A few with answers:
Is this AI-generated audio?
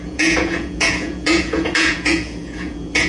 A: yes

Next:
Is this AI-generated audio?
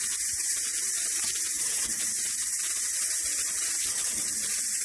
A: yes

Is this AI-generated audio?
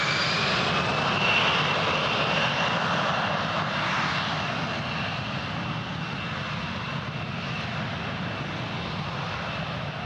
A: no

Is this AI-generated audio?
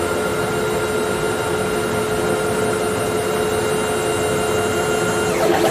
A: no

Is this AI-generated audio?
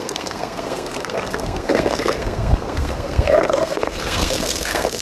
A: yes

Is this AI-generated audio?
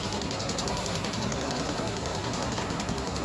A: yes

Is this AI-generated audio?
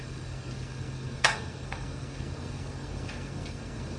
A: yes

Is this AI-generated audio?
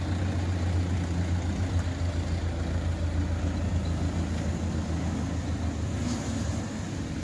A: no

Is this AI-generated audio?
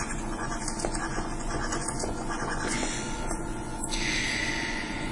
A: yes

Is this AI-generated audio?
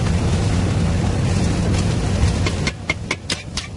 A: no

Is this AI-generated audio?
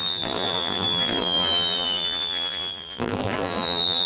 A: yes